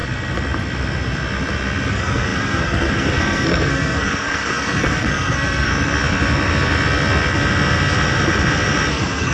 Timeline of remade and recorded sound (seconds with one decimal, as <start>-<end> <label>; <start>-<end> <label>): 0.0-1.9 recorded; 1.9-5.7 remade; 5.7-8.9 recorded; 8.9-9.3 remade